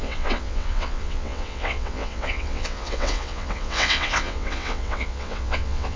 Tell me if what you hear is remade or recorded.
remade